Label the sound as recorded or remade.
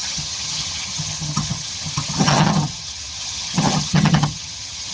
remade